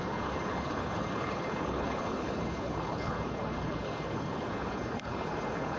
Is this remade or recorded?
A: remade